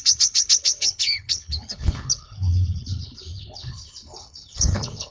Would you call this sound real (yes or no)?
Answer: no